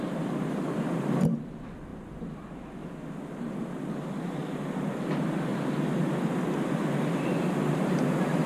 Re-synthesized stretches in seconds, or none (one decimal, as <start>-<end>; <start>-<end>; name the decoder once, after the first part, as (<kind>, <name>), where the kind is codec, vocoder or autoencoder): none